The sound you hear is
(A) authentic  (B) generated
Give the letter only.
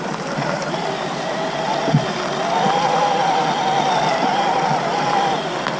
A